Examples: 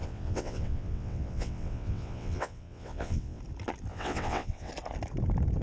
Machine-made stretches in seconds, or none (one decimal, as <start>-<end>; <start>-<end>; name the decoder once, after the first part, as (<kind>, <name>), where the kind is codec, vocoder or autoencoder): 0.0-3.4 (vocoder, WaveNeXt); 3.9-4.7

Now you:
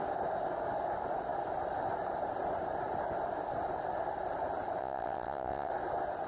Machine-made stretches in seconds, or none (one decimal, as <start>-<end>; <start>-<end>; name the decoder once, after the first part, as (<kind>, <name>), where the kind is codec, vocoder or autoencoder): 4.8-5.7 (vocoder, WaveNeXt)

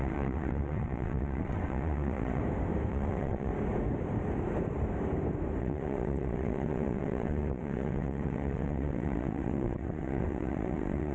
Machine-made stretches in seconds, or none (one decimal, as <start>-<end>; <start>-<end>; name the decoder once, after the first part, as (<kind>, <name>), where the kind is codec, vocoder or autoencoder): 0.0-2.4 (vocoder, WaveNeXt); 2.9-3.5; 5.6-11.1

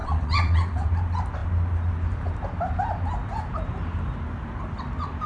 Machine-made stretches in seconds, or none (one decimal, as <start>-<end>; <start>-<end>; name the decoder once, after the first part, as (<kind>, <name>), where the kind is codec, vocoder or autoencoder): 0.0-0.9 (vocoder, WaveNeXt)